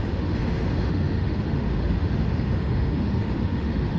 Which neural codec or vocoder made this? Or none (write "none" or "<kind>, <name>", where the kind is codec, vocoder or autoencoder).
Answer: autoencoder, DAC-VAE